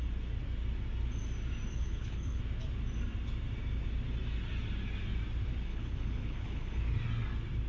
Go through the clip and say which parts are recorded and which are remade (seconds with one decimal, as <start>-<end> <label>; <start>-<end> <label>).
0.0-1.7 recorded; 1.7-2.4 remade; 2.4-5.7 recorded; 5.7-6.8 remade; 6.8-7.7 recorded